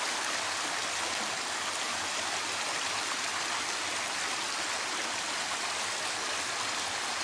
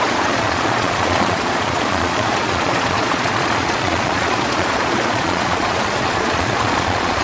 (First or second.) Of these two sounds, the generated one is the second